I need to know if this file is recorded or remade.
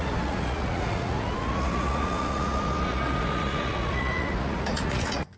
remade